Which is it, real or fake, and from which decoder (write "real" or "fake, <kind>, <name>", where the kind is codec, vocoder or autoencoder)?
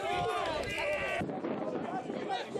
real